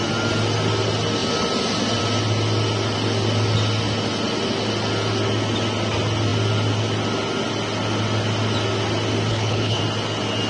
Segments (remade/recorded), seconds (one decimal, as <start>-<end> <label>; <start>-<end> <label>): 0.0-9.3 recorded; 9.3-9.8 remade; 9.8-10.5 recorded